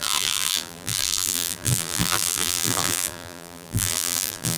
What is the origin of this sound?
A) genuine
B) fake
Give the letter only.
B